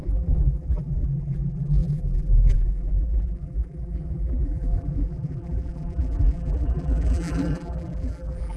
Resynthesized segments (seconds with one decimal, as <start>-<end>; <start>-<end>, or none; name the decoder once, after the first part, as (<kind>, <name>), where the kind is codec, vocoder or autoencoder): 0.0-8.6 (vocoder, BigVGAN v2)